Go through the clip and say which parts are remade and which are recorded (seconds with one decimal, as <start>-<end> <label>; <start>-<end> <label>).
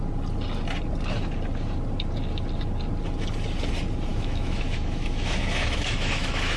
0.0-4.1 recorded; 4.1-6.6 remade